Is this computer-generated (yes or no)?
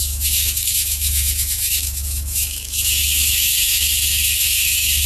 yes